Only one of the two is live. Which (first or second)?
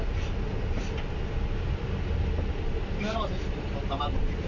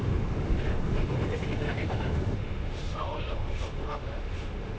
first